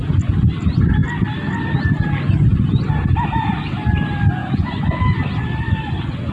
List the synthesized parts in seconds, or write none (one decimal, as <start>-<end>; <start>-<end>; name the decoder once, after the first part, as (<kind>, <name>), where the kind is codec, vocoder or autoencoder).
4.4-5.0 (vocoder, Vocos)